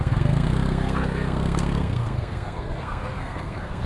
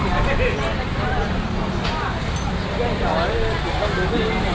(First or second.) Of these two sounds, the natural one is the second